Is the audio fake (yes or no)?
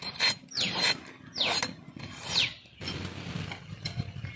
no